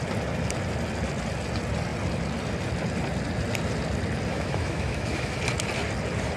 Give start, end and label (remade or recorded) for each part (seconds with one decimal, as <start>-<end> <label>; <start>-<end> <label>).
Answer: 0.0-4.3 recorded; 4.3-5.4 remade; 5.4-6.4 recorded